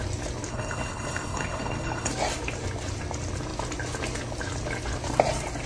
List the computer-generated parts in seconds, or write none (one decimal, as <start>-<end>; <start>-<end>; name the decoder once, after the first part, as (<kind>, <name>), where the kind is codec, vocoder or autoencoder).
0.5-2.1 (codec, HILCodec)